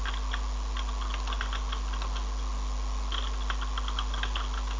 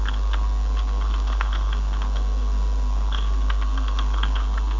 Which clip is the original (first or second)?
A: first